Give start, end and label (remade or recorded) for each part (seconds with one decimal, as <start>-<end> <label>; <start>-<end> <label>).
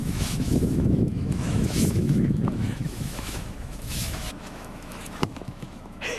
0.0-6.2 remade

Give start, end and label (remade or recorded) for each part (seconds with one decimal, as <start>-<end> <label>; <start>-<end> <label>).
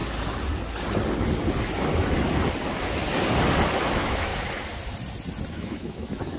0.0-3.8 recorded; 3.8-4.3 remade; 4.3-5.5 recorded; 5.5-6.4 remade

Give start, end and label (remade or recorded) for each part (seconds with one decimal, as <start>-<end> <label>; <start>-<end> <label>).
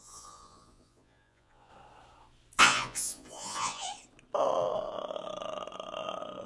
0.0-1.7 remade; 1.7-2.6 recorded; 2.6-3.9 remade; 3.9-6.5 recorded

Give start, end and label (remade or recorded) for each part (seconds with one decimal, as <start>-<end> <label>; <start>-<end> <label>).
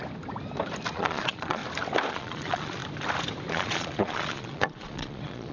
0.0-0.9 recorded; 0.9-1.6 remade; 1.6-2.1 recorded; 2.1-2.8 remade; 2.8-3.5 recorded; 3.5-5.5 remade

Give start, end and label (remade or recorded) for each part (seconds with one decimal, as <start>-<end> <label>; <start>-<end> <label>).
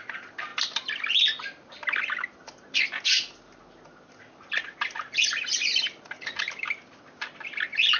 0.0-8.0 recorded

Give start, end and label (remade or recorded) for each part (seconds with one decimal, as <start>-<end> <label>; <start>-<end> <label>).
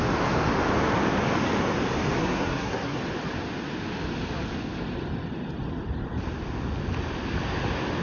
0.0-2.2 recorded; 2.2-3.0 remade; 3.0-8.0 recorded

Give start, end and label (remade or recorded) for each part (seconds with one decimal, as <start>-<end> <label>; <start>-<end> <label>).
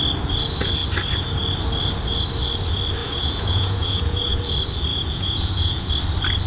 0.0-3.0 recorded; 3.0-4.4 remade; 4.4-4.9 recorded; 4.9-5.9 remade; 5.9-6.5 recorded